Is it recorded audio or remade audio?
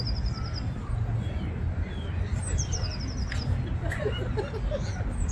recorded